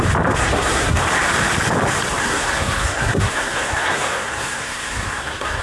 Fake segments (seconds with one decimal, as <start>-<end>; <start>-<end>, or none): 0.4-1.0; 2.2-5.6